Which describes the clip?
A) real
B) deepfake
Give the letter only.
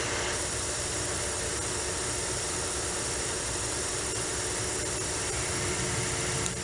A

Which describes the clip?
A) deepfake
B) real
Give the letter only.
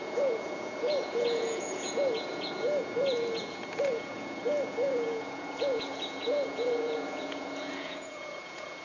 A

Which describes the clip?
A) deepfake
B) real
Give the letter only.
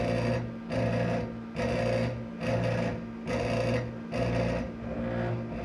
B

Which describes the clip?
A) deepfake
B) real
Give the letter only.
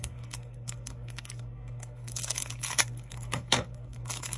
A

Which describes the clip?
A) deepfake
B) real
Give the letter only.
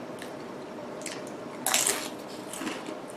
B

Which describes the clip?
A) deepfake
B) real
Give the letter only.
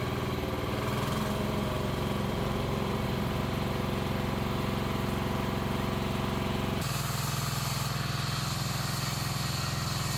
B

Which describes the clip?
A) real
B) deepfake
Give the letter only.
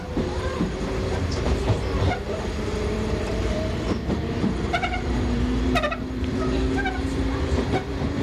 B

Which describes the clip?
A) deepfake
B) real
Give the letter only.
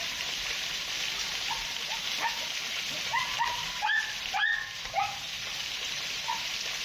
B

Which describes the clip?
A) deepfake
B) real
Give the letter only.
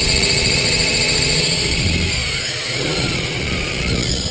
A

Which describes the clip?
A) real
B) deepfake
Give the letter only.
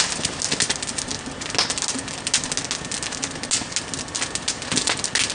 A